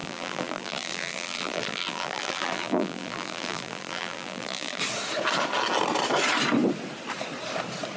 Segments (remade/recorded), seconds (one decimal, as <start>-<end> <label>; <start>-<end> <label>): 0.0-4.8 remade; 4.8-8.0 recorded